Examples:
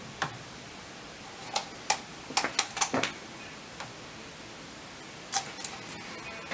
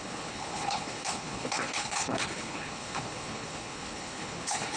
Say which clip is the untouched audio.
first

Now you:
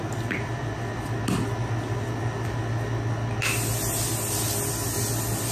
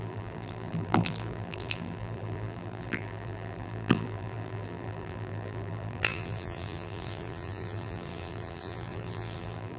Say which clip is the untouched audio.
first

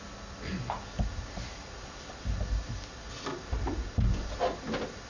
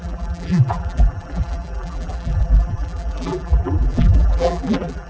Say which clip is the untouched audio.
first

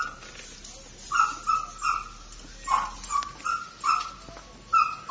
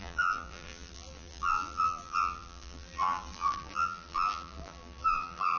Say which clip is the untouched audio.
first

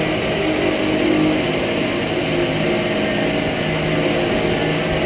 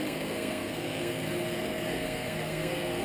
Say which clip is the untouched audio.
first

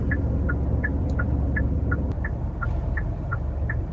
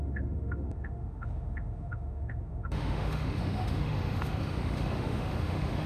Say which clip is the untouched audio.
first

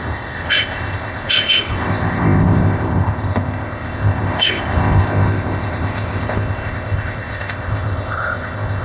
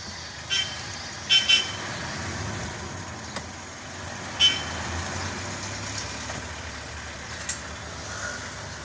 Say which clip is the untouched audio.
second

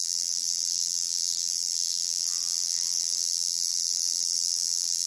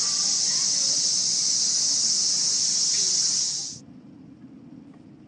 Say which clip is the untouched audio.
second